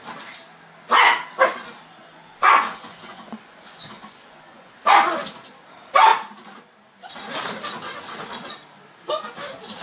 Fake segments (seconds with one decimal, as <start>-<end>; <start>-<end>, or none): 2.0-4.8